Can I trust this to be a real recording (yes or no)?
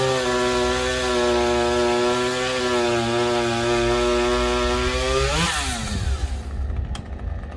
yes